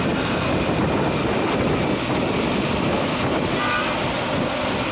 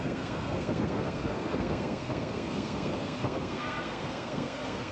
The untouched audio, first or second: first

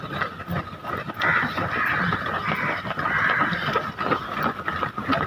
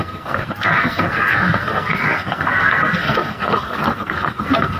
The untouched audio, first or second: first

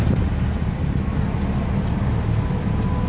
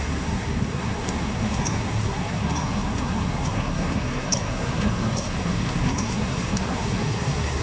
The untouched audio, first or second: first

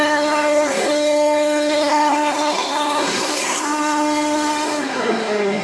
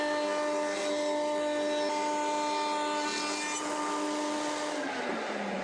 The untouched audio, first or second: second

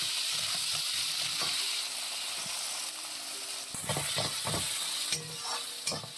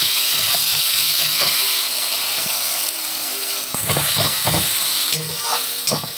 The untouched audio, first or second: first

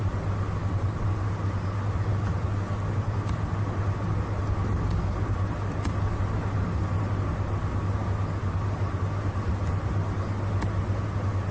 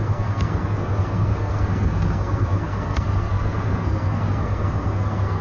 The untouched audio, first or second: first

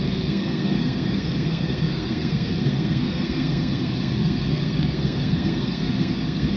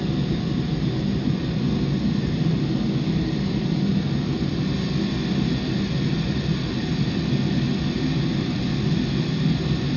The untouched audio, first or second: second